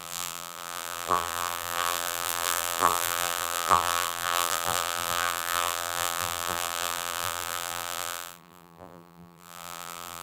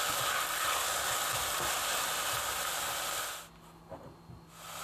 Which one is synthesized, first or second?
first